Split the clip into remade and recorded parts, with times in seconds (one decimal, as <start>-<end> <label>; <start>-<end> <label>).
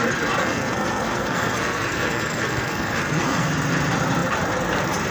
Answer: 0.0-0.4 recorded; 0.4-3.5 remade; 3.5-5.1 recorded